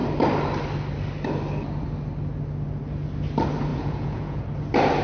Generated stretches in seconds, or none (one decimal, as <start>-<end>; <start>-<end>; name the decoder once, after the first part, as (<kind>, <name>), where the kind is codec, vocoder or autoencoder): 3.7-4.4 (vocoder, Vocos)